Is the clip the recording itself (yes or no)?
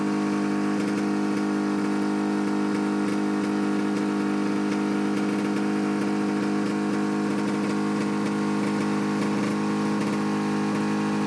yes